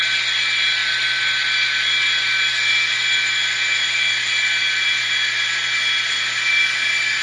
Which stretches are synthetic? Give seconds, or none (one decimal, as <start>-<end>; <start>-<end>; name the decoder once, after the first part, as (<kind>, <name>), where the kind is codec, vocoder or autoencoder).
none